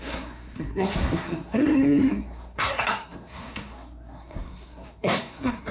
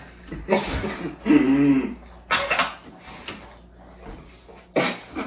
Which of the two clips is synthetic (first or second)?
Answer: first